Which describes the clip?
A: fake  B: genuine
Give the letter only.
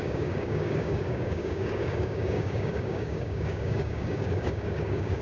A